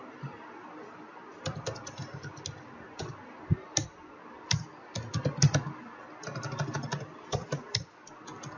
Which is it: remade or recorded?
recorded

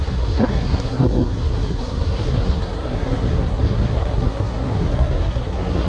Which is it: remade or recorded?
remade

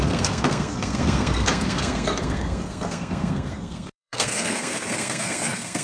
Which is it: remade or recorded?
remade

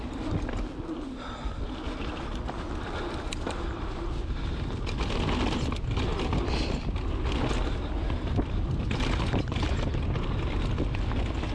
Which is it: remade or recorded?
recorded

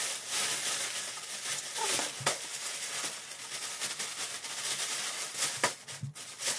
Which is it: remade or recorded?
recorded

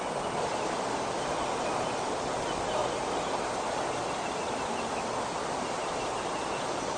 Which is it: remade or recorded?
recorded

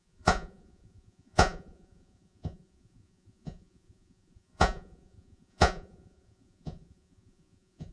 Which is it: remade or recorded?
remade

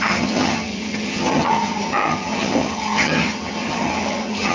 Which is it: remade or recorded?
remade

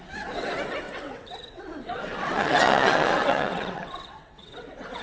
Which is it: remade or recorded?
remade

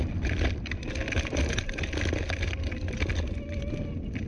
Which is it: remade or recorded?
recorded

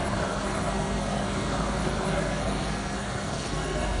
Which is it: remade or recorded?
remade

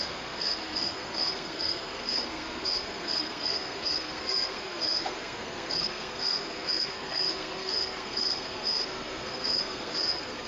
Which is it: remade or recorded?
remade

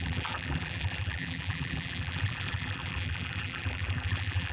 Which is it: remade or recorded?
remade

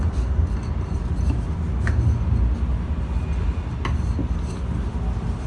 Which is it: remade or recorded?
recorded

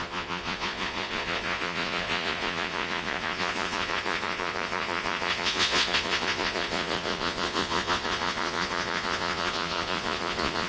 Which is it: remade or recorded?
remade